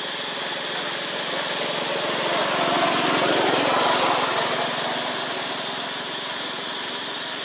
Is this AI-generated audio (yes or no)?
no